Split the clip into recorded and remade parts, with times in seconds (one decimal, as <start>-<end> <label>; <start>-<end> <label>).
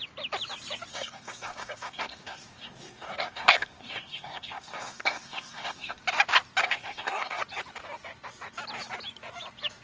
0.0-0.9 recorded; 0.9-6.0 remade; 6.0-6.6 recorded; 6.6-7.4 remade; 7.4-9.8 recorded